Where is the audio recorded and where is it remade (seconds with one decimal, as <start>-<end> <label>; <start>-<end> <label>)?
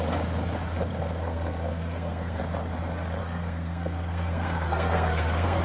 0.0-0.9 recorded; 0.9-2.4 remade; 2.4-3.2 recorded; 3.2-5.6 remade